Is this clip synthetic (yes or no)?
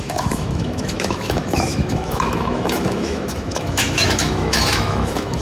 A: yes